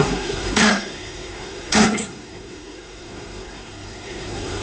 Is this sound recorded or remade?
remade